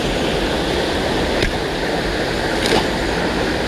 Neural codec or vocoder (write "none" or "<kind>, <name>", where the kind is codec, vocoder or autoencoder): none